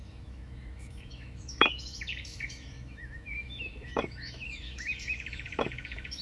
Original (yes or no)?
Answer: no